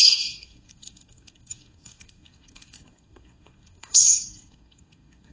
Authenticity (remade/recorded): remade